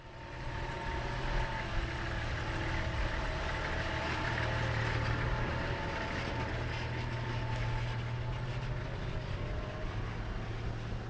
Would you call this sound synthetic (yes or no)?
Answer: no